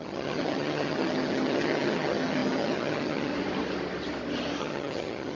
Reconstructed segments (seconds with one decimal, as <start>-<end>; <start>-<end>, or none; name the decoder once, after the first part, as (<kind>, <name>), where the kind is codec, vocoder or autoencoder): 0.0-3.3 (vocoder, HiFi-GAN); 4.6-5.3